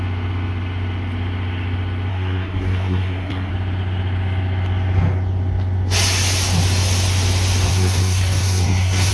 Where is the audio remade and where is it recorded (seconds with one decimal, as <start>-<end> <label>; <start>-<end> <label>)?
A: 0.0-2.1 recorded; 2.1-3.5 remade; 3.5-7.7 recorded; 7.7-9.1 remade